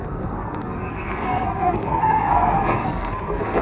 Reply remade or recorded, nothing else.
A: remade